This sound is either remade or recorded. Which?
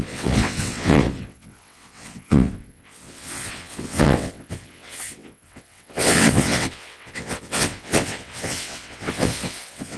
remade